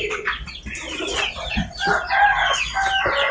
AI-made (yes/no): no